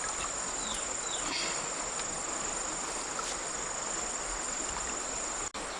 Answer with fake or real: real